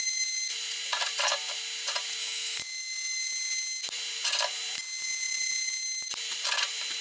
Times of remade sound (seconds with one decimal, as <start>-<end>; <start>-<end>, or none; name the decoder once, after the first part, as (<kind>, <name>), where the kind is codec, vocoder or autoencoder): 2.2-3.2 (autoencoder, DAC-VAE)